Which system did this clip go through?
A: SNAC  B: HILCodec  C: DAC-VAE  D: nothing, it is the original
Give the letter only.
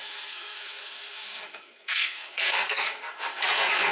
A